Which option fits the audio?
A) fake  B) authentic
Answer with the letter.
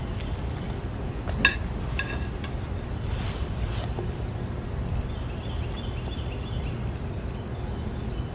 B